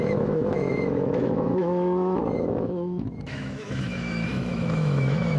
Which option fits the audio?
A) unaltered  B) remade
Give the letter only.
B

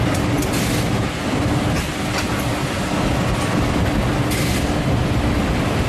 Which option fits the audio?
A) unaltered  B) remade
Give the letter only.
A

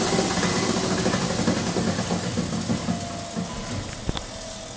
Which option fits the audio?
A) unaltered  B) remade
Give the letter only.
A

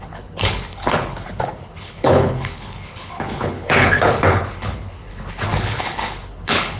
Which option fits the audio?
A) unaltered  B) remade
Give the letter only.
B